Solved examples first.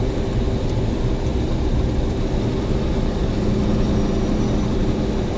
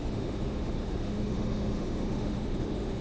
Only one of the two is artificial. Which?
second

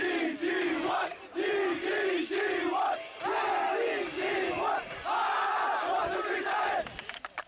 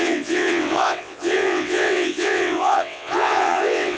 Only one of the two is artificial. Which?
second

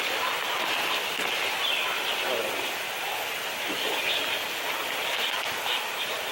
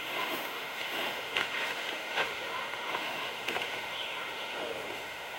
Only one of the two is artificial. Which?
second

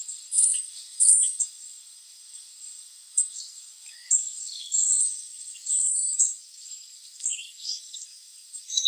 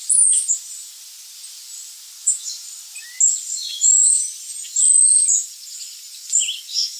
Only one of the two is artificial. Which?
first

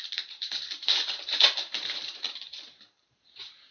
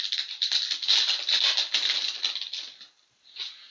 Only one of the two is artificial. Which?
first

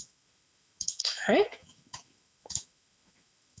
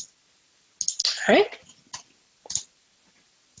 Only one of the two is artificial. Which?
first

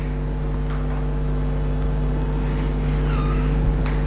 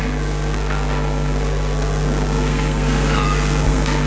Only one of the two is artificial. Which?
second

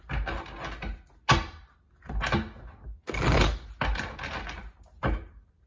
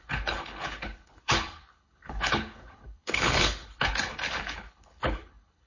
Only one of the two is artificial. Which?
second